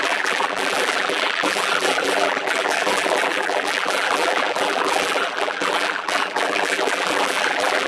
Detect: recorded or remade remade